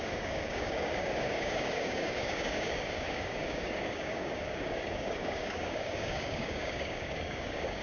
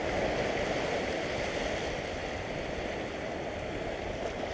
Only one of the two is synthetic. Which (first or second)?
first